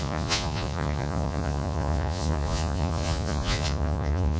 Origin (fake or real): fake